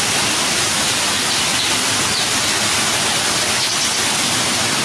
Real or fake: real